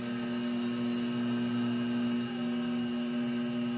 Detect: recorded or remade recorded